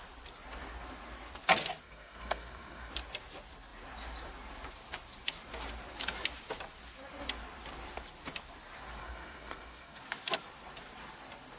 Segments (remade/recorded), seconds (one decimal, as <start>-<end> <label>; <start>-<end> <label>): 0.0-1.8 recorded; 1.8-2.9 remade; 2.9-9.0 recorded; 9.0-10.0 remade; 10.0-11.6 recorded